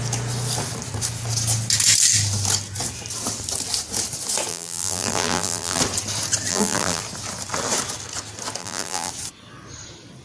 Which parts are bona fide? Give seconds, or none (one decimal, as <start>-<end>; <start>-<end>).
0.0-4.5; 5.8-6.5; 7.0-8.6; 9.1-10.2